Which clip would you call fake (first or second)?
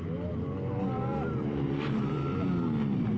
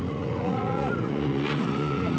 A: second